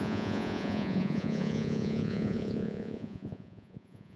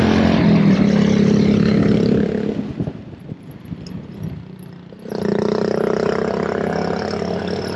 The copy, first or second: first